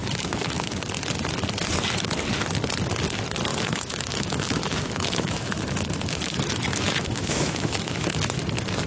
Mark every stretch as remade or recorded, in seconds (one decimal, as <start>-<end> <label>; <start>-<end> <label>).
0.0-0.8 remade; 0.8-3.5 recorded; 3.5-8.4 remade; 8.4-8.9 recorded